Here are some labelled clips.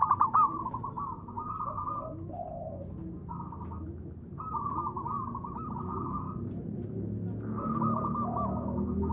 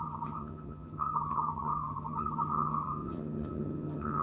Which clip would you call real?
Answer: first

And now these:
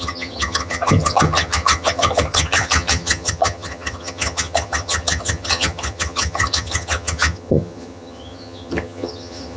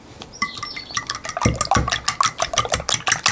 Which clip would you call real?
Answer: second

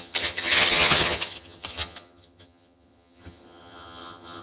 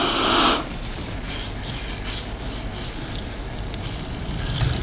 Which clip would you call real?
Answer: second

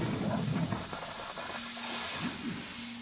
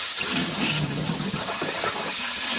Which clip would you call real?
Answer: first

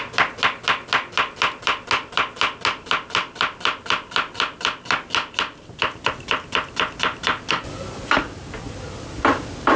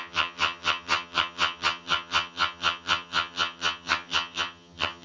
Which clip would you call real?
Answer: first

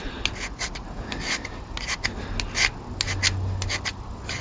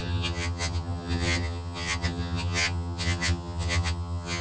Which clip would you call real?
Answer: first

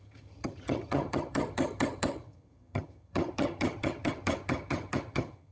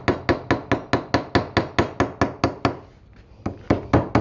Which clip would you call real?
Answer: second